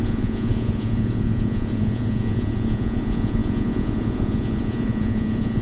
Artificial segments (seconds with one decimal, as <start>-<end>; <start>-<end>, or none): 0.0-5.6